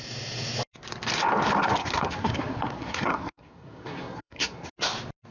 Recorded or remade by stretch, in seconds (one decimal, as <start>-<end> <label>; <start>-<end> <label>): 0.0-1.8 recorded; 1.8-4.7 remade; 4.7-5.3 recorded